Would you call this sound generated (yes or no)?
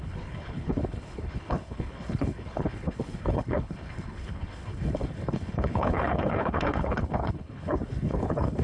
yes